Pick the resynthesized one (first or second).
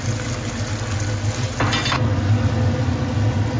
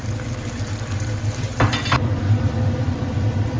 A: second